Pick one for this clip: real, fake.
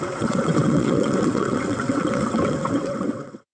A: fake